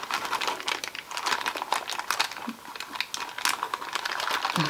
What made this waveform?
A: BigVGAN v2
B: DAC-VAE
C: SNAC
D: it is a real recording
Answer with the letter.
D